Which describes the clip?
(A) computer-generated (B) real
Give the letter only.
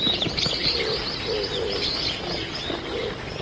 B